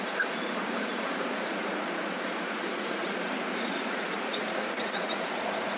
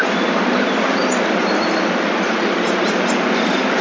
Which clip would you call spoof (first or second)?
first